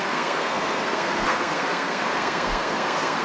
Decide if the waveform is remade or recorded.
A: remade